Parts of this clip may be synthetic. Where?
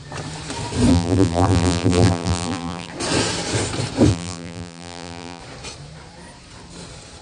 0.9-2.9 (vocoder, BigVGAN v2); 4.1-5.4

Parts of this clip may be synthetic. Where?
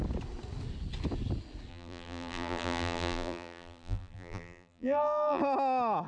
1.7-5.4 (vocoder, BigVGAN v2)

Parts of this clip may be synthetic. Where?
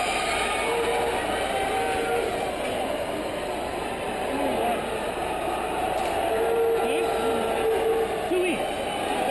none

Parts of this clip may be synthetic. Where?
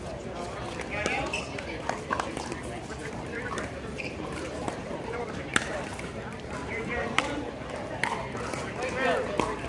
3.0-6.9 (vocoder, BigVGAN v2)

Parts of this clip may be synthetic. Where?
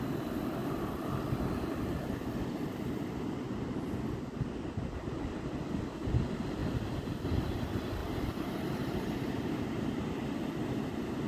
8.0-9.5 (vocoder, BigVGAN v2)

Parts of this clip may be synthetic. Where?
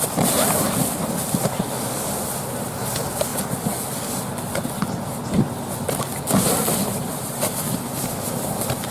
none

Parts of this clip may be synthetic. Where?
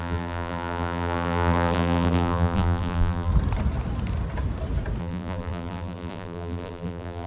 0.0-3.3 (vocoder, BigVGAN v2); 5.0-7.3